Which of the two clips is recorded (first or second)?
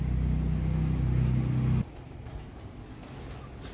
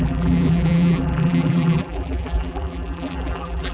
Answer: first